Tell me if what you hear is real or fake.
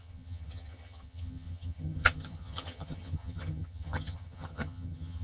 fake